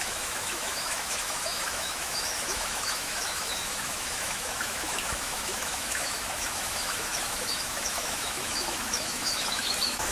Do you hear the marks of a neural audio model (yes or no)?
yes